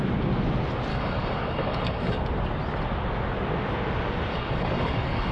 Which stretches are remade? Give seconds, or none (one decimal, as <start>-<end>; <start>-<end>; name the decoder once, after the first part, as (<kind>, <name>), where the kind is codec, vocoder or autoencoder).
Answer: 0.9-2.2 (codec, DAC); 4.3-5.3